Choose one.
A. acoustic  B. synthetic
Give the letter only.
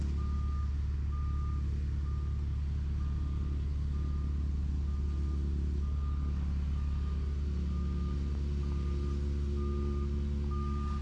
A